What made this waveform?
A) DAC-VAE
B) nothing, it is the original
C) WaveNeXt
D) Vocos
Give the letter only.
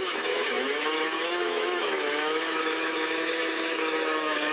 A